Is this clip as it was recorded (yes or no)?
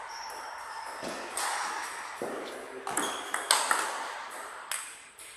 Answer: yes